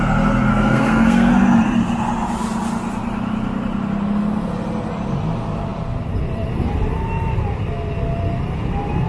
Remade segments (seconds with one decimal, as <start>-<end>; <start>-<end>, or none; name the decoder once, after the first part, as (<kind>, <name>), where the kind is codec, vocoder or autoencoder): 0.5-1.3 (codec, SNAC)